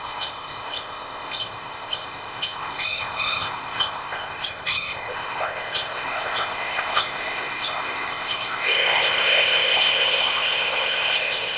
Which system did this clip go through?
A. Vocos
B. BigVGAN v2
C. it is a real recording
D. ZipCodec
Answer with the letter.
D